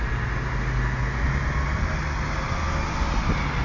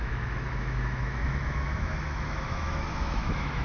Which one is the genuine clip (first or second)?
first